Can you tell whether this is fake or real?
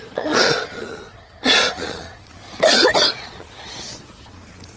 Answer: fake